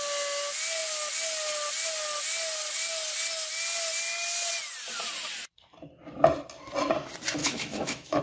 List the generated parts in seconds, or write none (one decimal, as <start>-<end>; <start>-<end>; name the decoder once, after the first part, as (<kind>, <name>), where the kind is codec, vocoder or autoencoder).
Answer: 7.4-8.2 (autoencoder, DAC-VAE)